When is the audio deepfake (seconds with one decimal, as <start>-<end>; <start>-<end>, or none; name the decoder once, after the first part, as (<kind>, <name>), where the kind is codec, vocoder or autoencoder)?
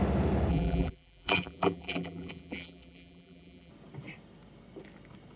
0.5-3.7 (vocoder, BigVGAN v2)